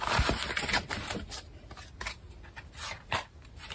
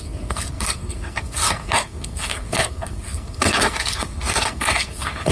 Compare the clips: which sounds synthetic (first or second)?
second